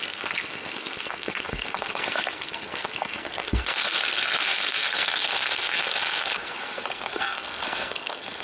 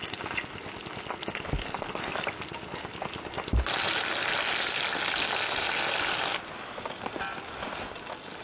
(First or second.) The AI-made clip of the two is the first